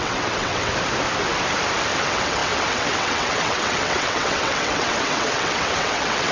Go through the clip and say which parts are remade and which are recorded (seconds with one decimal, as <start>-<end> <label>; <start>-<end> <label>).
0.0-0.7 remade; 0.7-2.0 recorded; 2.0-6.3 remade

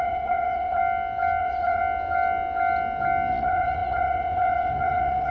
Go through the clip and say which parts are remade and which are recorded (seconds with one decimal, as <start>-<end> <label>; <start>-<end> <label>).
0.0-0.8 remade; 0.8-1.4 recorded; 1.4-1.8 remade; 1.8-3.3 recorded; 3.3-5.3 remade

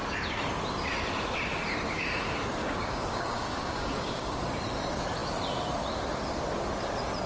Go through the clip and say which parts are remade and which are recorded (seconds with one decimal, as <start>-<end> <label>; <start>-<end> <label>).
0.0-2.6 recorded; 2.6-4.4 remade; 4.4-7.3 recorded